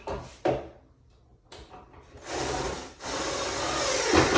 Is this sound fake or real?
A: real